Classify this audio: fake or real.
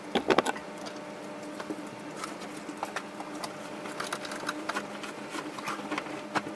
real